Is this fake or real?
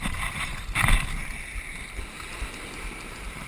real